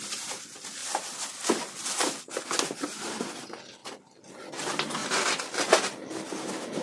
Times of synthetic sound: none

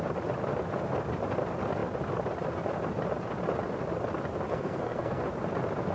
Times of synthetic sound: 4.5-5.2 (codec, SNAC)

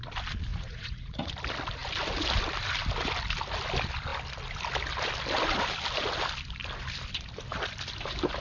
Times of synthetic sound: 0.5-1.3 (vocoder, Vocos)

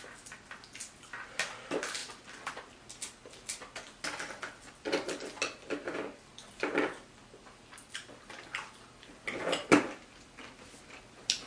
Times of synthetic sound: none

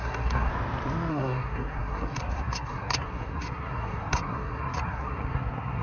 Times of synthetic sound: 0.0-0.5 (codec, SNAC); 1.1-5.8

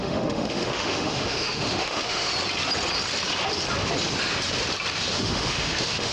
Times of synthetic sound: 0.0-2.3 (autoencoder, DAC-VAE); 5.1-6.1

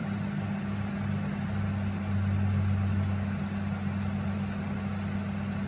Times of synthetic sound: none

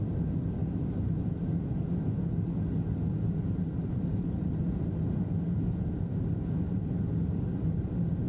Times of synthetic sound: none